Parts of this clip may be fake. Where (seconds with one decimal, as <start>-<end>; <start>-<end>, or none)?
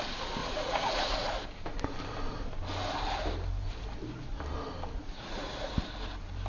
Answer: 0.4-1.1; 5.0-5.7